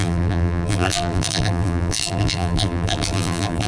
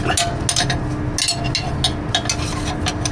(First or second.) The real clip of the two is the second